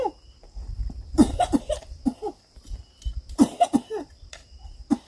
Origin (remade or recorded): remade